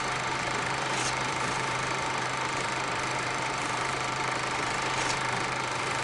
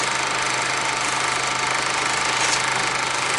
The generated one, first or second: first